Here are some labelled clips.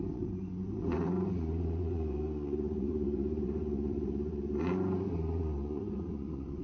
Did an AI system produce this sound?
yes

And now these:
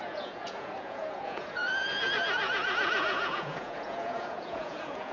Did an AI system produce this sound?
yes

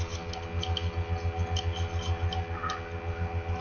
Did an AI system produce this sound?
no